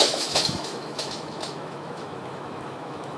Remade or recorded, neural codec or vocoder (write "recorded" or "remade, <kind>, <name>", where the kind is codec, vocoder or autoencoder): remade, autoencoder, DAC-VAE